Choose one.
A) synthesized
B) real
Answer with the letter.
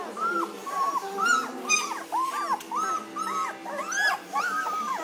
B